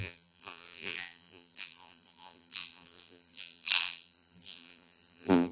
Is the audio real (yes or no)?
no